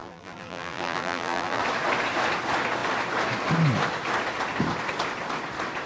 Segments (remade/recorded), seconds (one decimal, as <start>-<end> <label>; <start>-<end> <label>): 0.0-1.6 remade; 1.6-5.9 recorded